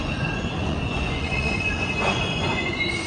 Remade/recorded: remade